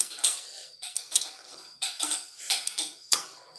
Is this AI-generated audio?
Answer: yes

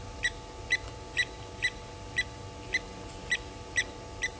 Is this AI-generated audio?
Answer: no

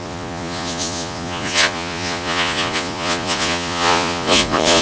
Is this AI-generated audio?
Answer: yes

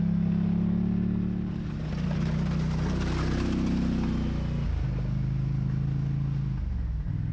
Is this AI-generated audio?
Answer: no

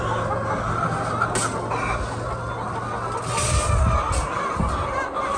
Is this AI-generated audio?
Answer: no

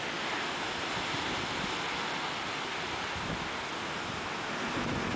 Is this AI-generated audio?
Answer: no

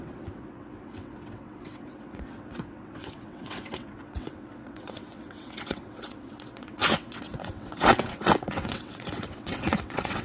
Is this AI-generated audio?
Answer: yes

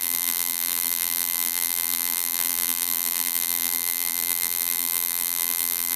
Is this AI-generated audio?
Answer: yes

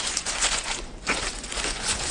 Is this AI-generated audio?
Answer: yes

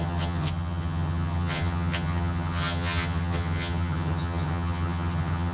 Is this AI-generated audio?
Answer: yes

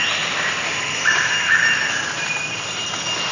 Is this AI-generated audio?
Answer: no